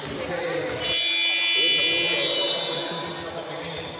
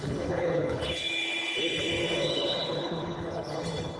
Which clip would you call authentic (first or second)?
first